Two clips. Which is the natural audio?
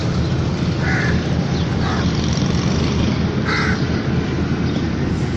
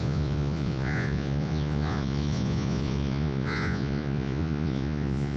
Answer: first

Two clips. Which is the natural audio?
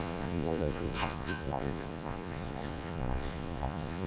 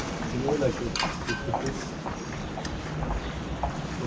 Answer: second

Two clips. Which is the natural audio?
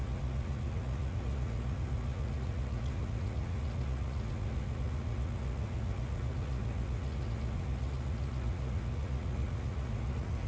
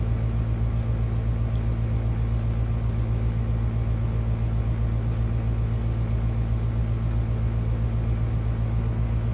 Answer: second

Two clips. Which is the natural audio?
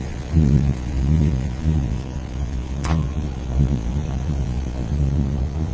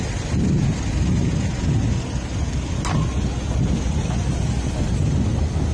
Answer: second